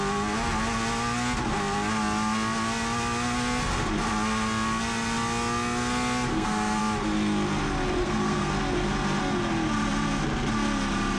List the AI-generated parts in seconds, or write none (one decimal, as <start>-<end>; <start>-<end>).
6.3-6.8; 8.0-8.5